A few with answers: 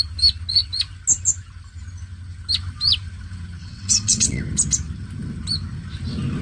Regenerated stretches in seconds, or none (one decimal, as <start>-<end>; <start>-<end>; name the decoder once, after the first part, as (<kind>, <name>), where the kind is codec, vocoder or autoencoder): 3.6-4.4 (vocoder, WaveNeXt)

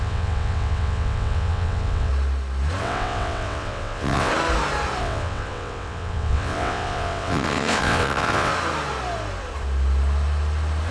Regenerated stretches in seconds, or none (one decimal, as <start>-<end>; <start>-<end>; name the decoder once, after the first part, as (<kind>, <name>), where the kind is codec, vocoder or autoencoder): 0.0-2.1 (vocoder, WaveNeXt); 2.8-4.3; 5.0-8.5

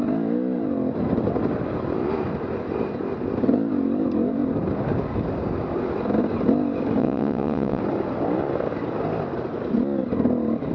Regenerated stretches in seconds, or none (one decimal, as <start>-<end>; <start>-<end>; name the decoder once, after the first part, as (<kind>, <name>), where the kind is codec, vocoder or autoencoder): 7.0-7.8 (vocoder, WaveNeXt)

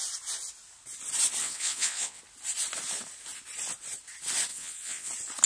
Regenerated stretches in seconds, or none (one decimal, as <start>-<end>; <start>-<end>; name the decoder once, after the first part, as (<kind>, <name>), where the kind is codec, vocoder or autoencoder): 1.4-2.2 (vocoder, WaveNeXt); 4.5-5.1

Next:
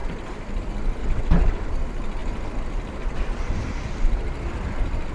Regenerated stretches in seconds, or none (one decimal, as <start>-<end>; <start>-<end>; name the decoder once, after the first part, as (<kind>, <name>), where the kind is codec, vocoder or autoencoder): 1.0-1.7 (vocoder, WaveNeXt)